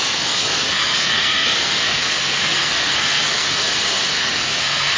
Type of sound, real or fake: fake